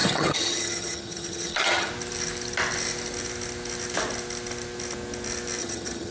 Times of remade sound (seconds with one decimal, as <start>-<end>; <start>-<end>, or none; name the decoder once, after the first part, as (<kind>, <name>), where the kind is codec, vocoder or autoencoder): 0.0-1.9 (vocoder, HiFi-GAN); 5.6-6.1